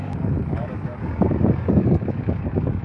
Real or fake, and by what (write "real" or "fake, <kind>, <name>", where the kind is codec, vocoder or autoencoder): fake, codec, DAC